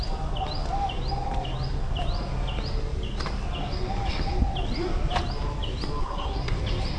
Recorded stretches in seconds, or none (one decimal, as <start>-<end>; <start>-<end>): 0.0-6.0; 6.6-7.0